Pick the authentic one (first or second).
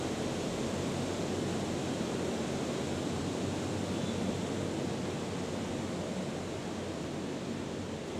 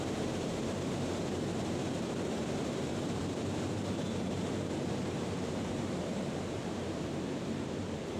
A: first